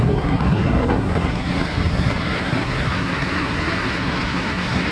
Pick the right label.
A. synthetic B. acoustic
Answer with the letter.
A